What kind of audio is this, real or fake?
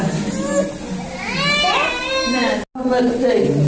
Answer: real